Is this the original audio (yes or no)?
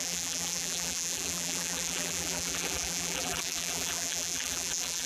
no